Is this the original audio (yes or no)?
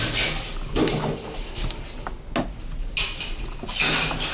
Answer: yes